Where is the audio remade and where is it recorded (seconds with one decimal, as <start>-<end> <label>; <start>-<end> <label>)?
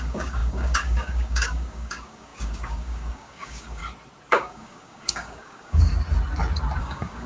0.0-3.8 remade; 3.8-4.3 recorded; 4.3-5.9 remade; 5.9-6.8 recorded; 6.8-7.3 remade